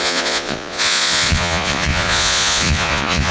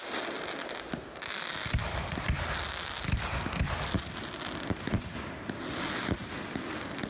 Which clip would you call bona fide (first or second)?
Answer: second